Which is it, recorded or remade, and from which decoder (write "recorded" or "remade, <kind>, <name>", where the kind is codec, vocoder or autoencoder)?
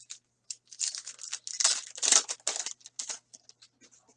recorded